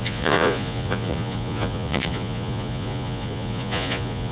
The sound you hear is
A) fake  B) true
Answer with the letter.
A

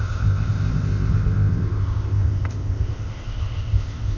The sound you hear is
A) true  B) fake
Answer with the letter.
B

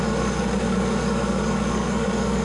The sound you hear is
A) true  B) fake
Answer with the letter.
B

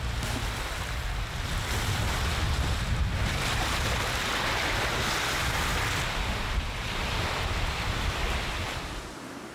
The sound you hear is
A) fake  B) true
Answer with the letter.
B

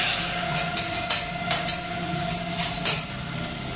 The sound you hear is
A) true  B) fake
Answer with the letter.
A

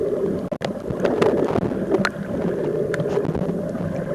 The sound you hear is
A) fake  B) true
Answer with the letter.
B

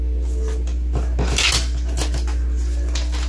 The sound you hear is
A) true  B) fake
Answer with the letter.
A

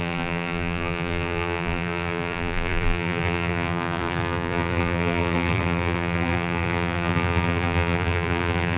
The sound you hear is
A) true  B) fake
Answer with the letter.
B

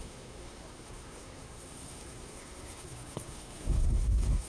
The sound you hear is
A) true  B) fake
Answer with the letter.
B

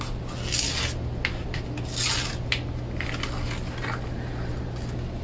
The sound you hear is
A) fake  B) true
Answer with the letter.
B